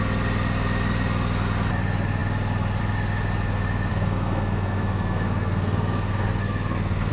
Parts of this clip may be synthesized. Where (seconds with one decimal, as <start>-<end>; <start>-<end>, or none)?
3.9-7.1